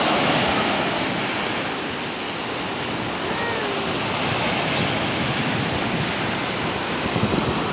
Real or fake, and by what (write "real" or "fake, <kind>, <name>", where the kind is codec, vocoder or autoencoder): real